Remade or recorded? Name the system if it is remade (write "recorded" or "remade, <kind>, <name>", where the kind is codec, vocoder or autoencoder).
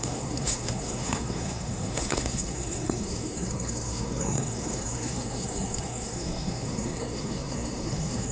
remade, codec, SNAC